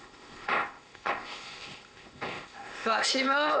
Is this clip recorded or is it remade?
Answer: remade